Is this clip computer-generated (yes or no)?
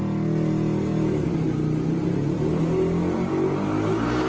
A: no